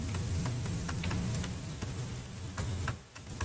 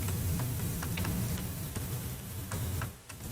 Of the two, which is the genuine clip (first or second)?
first